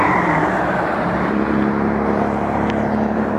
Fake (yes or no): yes